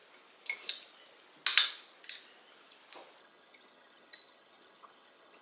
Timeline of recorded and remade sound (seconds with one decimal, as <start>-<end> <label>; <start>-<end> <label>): 0.0-3.2 recorded; 3.2-5.4 remade